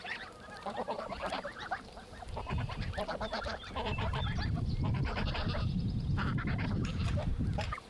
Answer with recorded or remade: remade